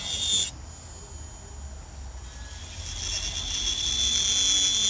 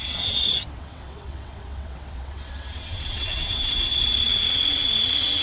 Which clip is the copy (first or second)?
second